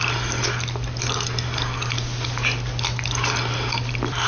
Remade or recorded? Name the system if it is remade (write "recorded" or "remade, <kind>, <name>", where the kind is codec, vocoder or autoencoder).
recorded